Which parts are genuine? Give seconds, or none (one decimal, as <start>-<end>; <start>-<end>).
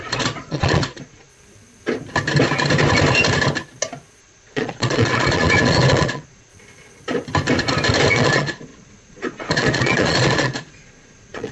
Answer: 1.3-4.2; 6.5-8.1